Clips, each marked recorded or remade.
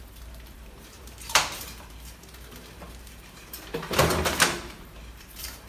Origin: remade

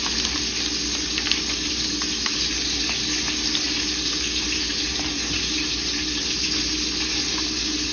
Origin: recorded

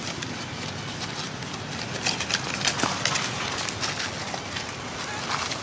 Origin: recorded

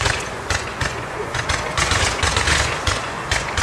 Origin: remade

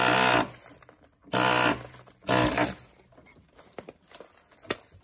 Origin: recorded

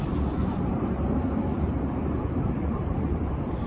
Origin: remade